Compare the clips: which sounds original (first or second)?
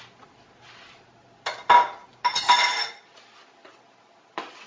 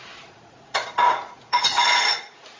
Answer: first